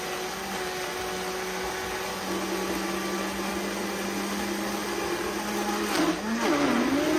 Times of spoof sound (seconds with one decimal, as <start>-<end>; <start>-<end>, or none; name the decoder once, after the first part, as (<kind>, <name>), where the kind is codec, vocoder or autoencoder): none